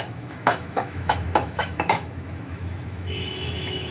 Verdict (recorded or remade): remade